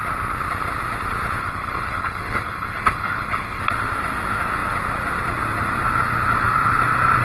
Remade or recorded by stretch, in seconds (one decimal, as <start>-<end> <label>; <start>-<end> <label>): 0.0-1.4 recorded; 1.4-3.6 remade; 3.6-7.2 recorded